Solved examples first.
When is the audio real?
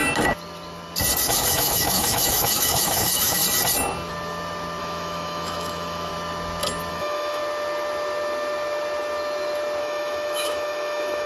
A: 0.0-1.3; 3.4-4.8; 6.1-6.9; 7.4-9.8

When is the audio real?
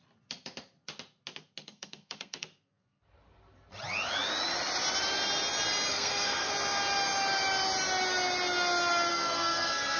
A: 0.0-1.6; 3.0-5.9; 6.5-9.1